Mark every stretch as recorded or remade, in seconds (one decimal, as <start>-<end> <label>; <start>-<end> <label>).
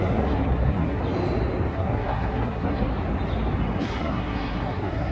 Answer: 0.0-1.0 remade; 1.0-1.7 recorded; 1.7-2.9 remade; 2.9-3.8 recorded; 3.8-5.1 remade